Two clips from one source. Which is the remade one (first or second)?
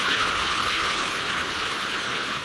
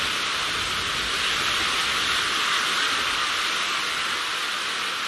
first